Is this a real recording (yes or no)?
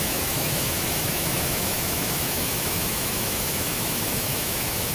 no